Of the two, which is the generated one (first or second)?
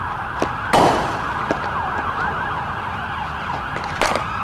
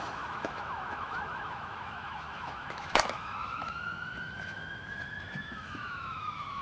second